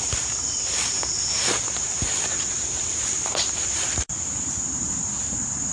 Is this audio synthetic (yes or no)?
yes